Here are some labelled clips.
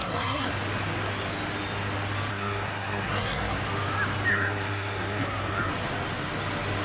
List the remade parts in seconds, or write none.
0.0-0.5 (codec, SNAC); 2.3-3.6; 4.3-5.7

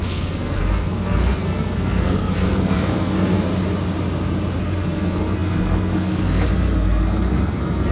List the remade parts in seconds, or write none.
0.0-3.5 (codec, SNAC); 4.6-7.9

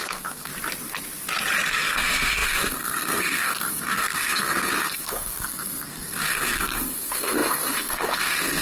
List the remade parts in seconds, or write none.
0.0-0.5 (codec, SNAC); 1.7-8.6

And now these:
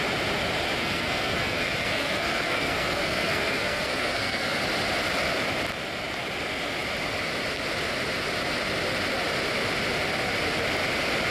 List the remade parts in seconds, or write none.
0.8-4.6 (codec, SNAC)

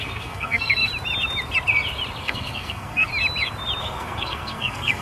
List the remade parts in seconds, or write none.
0.0-0.9 (codec, SNAC); 2.2-3.1; 3.8-5.0

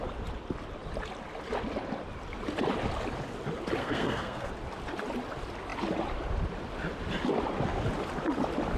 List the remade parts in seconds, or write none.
3.8-4.5 (codec, SNAC)

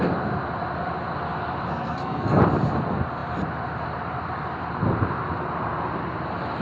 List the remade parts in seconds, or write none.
1.7-2.4 (codec, SNAC)